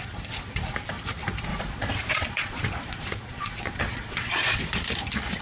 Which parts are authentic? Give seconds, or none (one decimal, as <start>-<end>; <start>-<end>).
0.0-1.5; 4.6-5.4